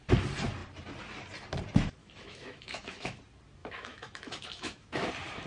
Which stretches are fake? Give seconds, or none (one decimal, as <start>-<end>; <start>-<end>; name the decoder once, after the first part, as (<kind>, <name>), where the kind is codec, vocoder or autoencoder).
2.0-3.2 (autoencoder, DAC-VAE); 3.6-5.1

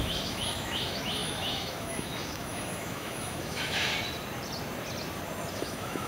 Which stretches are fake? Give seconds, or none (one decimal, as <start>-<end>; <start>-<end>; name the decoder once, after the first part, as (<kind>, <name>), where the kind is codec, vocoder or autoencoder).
0.0-3.9 (autoencoder, DAC-VAE); 5.5-6.1

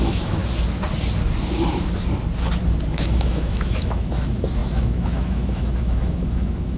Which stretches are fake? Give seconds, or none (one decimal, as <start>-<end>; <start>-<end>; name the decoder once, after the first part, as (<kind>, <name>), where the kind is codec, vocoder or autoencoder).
0.0-0.4 (autoencoder, DAC-VAE); 2.9-6.8

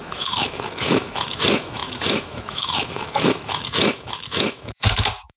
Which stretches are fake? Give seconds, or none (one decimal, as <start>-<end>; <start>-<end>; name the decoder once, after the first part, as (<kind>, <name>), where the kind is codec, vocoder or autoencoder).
0.0-5.4 (autoencoder, DAC-VAE)

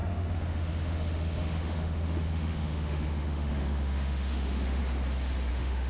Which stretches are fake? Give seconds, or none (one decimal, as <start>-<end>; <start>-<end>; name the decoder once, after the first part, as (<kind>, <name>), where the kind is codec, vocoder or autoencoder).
0.0-4.8 (autoencoder, DAC-VAE); 5.5-5.9

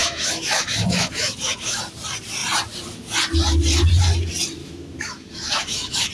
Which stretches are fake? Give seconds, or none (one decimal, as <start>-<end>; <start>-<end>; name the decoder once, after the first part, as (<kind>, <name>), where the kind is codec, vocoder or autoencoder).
0.0-1.8 (autoencoder, DAC-VAE); 4.6-6.1